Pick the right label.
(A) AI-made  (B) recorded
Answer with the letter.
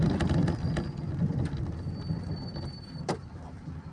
B